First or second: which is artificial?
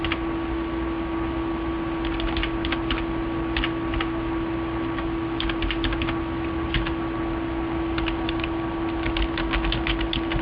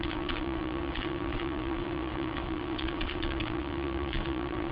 second